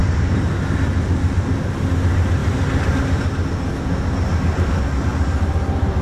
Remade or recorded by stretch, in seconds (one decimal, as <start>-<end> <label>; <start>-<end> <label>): 0.0-0.5 remade; 0.5-6.0 recorded